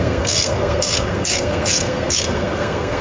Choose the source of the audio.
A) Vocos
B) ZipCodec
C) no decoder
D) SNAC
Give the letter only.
D